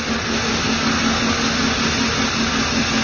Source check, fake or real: real